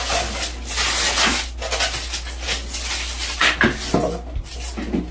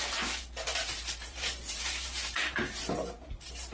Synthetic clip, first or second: second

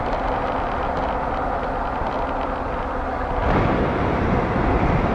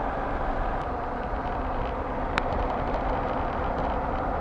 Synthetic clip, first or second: second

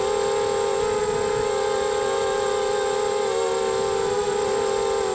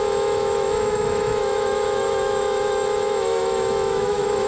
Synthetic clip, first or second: second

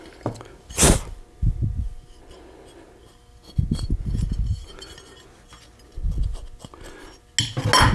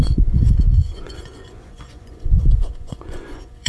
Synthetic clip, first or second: second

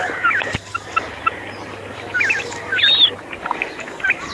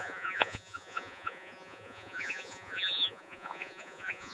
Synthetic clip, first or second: second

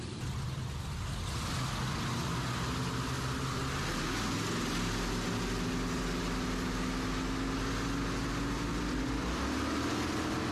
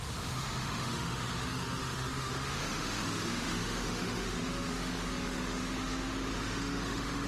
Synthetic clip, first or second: second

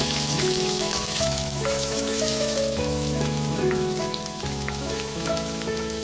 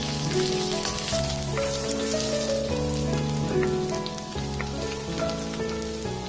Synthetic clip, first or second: first